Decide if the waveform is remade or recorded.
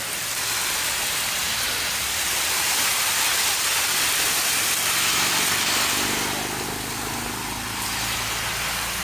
recorded